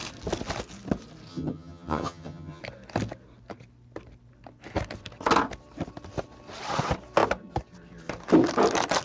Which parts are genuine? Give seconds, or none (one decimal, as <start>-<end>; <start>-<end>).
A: 0.0-1.3; 2.6-9.0